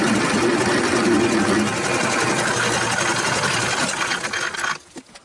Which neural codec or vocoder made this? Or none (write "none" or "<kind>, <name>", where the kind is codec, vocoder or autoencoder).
none